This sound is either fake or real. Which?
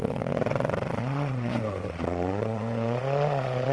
fake